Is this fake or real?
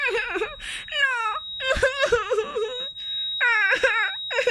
real